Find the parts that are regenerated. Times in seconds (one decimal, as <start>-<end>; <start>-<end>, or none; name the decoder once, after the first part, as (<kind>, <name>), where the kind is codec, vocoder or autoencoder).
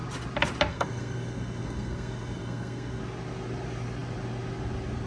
0.7-3.0 (codec, SNAC)